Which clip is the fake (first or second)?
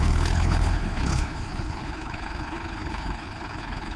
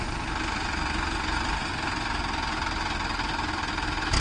first